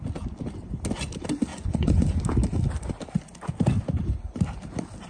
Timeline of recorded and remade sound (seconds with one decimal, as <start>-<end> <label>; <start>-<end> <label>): 0.0-1.5 recorded; 1.5-2.2 remade; 2.2-5.1 recorded